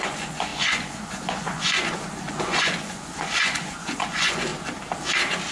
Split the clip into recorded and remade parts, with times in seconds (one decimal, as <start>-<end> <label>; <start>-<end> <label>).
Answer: 0.0-4.5 remade; 4.5-5.5 recorded

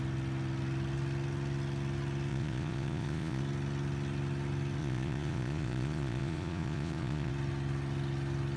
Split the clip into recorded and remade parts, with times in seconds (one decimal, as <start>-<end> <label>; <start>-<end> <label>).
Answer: 0.0-2.3 recorded; 2.3-3.4 remade; 3.4-4.8 recorded; 4.8-7.3 remade; 7.3-8.6 recorded

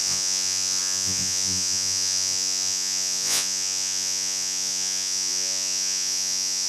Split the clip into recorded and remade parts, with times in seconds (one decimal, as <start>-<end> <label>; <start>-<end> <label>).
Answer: 0.0-6.7 remade